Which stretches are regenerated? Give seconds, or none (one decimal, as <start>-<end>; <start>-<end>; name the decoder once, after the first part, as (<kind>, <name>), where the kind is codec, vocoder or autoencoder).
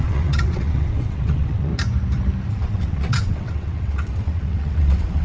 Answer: 0.0-1.7 (vocoder, WaveNeXt); 2.5-5.2